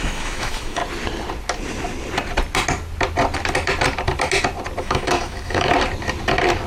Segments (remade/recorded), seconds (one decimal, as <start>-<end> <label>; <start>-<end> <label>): 0.0-0.8 remade; 0.8-4.8 recorded; 4.8-5.7 remade; 5.7-6.7 recorded